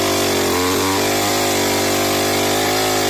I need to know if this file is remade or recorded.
recorded